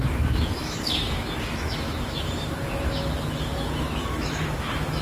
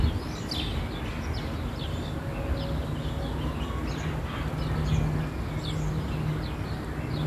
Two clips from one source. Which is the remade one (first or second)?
first